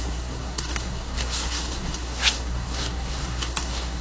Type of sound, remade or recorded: remade